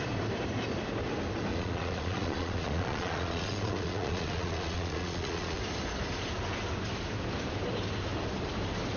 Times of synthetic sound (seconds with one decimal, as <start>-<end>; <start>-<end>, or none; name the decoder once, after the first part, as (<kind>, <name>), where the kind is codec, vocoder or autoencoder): 1.5-5.6 (vocoder, Vocos)

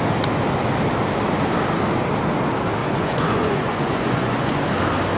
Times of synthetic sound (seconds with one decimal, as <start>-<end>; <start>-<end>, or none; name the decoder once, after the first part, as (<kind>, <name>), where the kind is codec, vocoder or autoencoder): 2.8-4.6 (vocoder, Vocos)

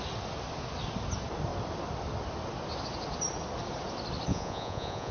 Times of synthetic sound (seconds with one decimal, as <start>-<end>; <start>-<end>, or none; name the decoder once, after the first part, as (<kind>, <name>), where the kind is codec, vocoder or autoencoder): 4.3-5.1 (vocoder, Vocos)